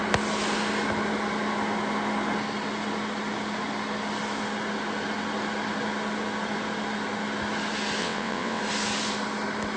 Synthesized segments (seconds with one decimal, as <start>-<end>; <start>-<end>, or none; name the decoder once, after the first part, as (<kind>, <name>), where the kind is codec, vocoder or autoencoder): 8.0-8.6 (vocoder, WaveNeXt)